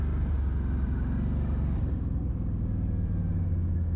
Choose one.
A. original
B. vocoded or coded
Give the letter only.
A